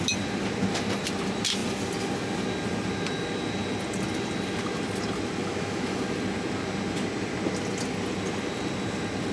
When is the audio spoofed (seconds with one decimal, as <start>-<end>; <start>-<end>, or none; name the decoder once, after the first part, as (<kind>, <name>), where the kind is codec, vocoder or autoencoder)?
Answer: 5.4-6.0 (autoencoder, DAC-VAE)